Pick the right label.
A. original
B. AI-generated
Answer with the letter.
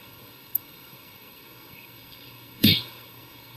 B